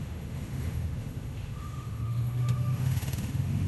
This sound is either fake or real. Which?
fake